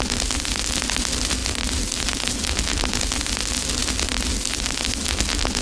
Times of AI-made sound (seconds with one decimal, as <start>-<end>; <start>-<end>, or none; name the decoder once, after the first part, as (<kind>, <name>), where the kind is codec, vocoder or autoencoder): 1.4-2.0 (vocoder, BigVGAN v2)